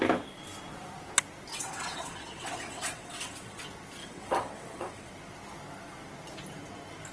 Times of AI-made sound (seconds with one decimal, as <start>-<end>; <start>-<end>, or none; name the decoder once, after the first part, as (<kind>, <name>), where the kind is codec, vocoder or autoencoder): 1.5-3.6 (vocoder, WaveNeXt); 4.0-5.1